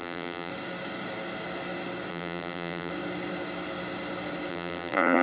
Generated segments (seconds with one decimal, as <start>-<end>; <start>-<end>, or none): 0.0-0.5; 2.1-2.9; 4.5-5.2

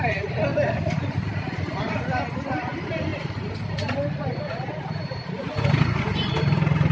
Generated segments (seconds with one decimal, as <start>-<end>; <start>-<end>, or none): none

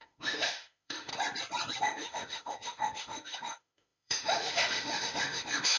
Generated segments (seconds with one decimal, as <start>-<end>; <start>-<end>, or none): 0.0-1.1; 1.8-5.8

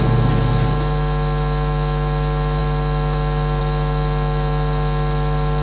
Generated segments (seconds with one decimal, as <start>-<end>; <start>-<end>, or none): none

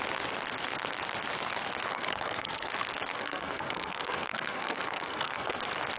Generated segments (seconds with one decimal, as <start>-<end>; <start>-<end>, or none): 1.9-2.7; 3.1-5.6

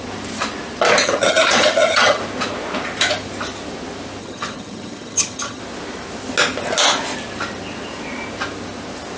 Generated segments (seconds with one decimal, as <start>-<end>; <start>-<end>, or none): 1.0-2.2; 4.2-5.6

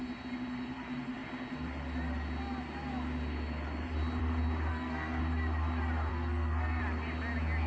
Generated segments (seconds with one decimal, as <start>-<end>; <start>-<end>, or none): 4.7-5.2; 6.1-6.8